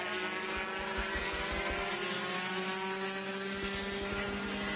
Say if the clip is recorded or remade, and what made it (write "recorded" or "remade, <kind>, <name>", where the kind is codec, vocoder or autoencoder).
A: recorded